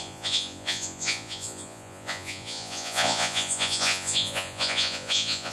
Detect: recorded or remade remade